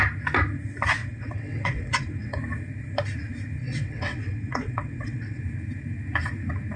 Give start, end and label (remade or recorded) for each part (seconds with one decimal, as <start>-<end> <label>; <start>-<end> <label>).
0.0-1.0 recorded; 1.0-2.4 remade; 2.4-3.6 recorded; 3.6-5.4 remade; 5.4-6.8 recorded